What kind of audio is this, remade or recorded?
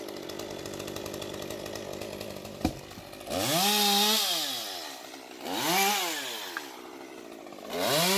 recorded